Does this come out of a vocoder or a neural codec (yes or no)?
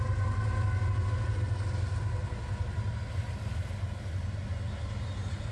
no